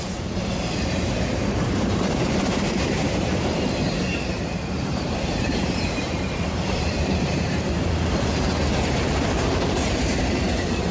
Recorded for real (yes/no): no